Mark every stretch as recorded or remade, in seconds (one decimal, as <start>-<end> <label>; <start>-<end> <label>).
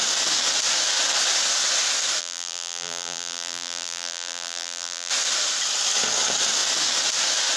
0.0-2.2 recorded; 2.2-5.1 remade; 5.1-7.6 recorded